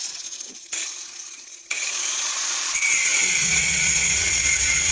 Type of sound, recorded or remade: remade